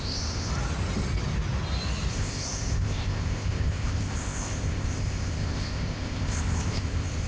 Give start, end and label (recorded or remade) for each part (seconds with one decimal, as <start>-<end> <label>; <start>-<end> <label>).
0.0-0.5 remade; 0.5-2.1 recorded; 2.1-7.3 remade